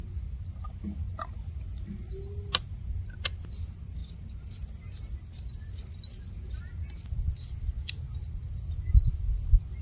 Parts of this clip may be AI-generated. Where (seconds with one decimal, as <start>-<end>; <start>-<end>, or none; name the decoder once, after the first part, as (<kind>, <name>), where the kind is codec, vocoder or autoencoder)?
none